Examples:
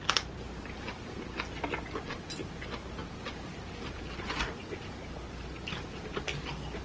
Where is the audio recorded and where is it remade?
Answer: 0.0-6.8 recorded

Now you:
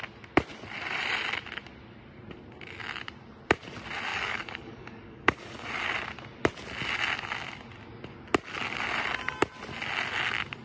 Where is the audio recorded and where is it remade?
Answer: 0.0-4.1 recorded; 4.1-5.7 remade; 5.7-10.6 recorded

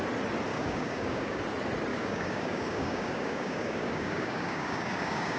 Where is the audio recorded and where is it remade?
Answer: 0.0-0.5 recorded; 0.5-1.4 remade; 1.4-1.9 recorded; 1.9-5.4 remade

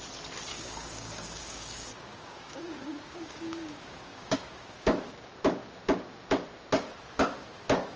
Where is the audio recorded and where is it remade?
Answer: 0.0-0.5 recorded; 0.5-5.3 remade; 5.3-8.0 recorded

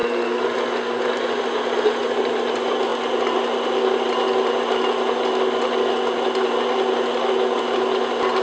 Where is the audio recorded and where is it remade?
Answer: 0.0-8.4 recorded

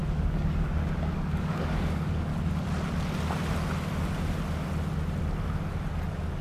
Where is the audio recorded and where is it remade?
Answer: 0.0-2.3 remade; 2.3-6.4 recorded

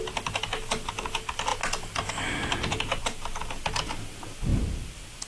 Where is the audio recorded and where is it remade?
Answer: 0.0-5.3 recorded

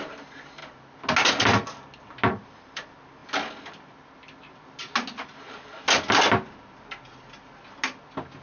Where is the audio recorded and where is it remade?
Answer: 0.0-8.4 recorded